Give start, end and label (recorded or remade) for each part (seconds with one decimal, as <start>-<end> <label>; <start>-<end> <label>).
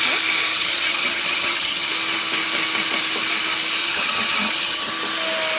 0.0-0.5 recorded; 0.5-1.9 remade; 1.9-3.8 recorded; 3.8-4.9 remade; 4.9-5.6 recorded